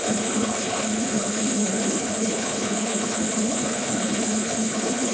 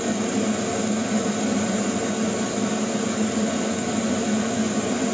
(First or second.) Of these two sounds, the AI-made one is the first